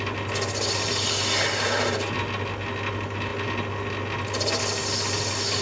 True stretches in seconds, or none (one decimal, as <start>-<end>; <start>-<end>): 0.0-5.6